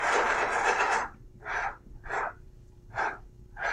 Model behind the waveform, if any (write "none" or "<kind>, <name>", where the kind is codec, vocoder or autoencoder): vocoder, BigVGAN v2